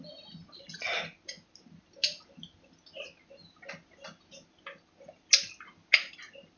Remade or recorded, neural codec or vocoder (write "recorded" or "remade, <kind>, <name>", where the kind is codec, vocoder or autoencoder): recorded